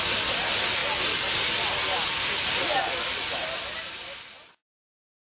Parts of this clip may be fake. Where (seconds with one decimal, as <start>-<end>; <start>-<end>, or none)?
none